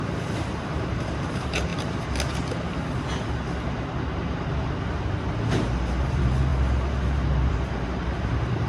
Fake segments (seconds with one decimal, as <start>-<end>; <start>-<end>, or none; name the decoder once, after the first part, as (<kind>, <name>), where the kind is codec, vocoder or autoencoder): 0.0-1.7 (vocoder, BigVGAN v2); 6.1-6.5; 7.5-8.7